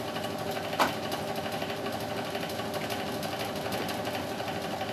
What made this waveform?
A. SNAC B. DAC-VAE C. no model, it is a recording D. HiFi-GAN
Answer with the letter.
C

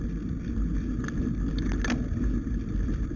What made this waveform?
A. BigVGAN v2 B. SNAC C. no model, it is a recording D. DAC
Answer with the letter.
C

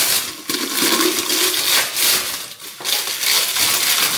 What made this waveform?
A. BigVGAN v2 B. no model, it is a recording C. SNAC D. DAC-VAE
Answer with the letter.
B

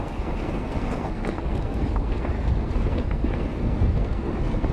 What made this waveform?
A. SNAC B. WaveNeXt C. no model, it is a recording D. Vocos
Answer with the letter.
A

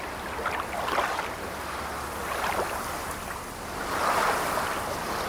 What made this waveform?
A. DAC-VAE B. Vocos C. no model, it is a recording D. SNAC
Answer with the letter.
C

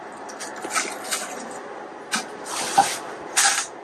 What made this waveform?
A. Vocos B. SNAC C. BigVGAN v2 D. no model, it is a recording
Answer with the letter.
D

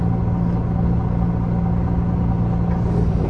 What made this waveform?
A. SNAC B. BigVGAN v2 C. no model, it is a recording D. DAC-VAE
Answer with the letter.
C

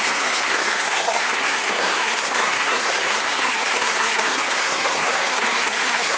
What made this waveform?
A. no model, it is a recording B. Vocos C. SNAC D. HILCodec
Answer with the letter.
C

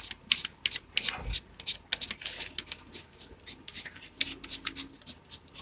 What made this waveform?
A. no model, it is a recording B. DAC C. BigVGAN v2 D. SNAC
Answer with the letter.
A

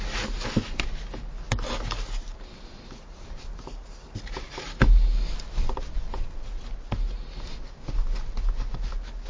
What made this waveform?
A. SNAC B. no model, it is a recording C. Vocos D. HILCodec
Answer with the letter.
B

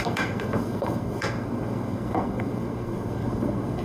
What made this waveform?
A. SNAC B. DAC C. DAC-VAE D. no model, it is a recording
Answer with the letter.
A